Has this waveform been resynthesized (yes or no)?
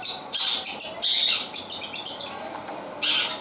no